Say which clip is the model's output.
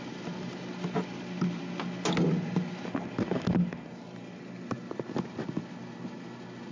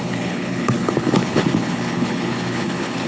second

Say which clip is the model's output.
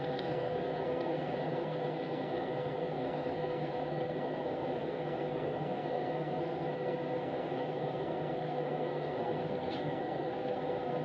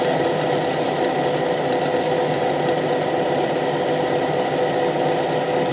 first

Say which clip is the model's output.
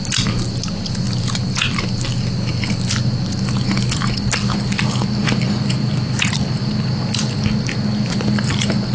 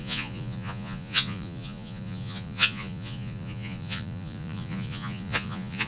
second